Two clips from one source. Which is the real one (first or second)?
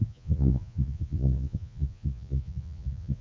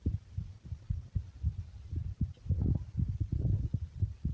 second